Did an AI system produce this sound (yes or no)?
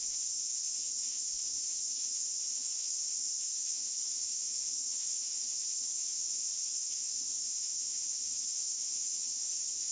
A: yes